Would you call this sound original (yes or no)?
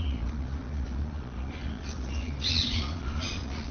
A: no